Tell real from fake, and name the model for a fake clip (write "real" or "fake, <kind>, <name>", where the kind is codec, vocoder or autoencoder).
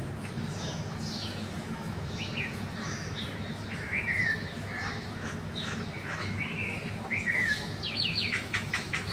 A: fake, autoencoder, DAC-VAE